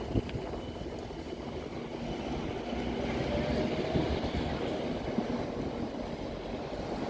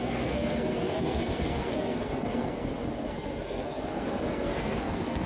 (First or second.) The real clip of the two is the first